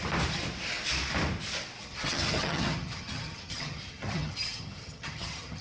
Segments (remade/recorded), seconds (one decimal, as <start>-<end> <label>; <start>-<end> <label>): 0.0-1.8 recorded; 1.8-5.6 remade